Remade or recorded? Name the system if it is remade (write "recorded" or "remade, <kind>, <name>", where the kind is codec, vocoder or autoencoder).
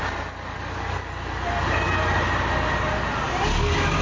recorded